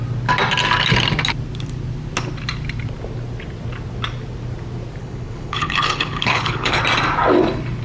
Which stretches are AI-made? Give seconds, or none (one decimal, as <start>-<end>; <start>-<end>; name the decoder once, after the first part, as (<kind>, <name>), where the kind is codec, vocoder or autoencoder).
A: 5.0-6.8 (codec, HILCodec)